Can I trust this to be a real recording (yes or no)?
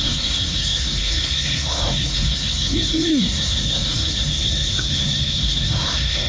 no